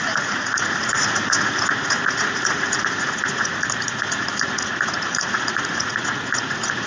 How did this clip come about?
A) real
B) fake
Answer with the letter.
B